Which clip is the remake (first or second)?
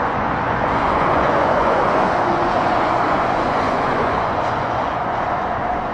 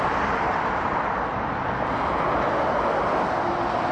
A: first